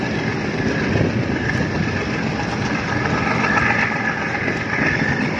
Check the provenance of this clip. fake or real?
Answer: real